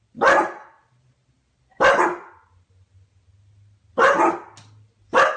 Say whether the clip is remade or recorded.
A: recorded